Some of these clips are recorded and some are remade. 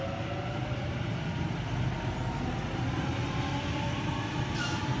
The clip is recorded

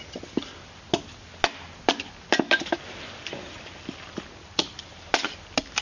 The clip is recorded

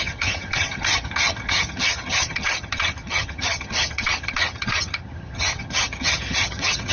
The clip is remade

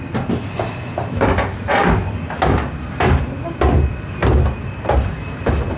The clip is recorded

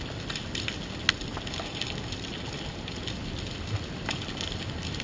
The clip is recorded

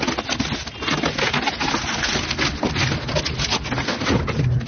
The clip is recorded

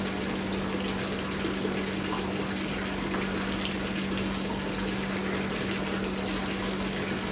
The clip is recorded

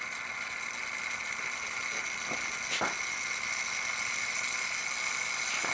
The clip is recorded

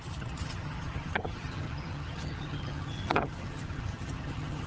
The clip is remade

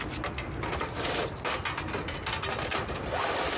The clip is recorded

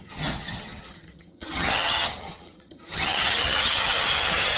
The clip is remade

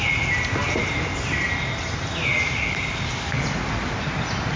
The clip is recorded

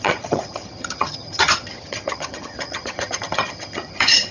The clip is remade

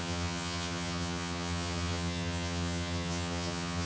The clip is remade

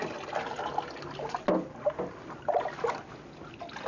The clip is recorded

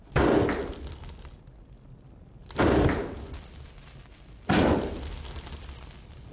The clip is recorded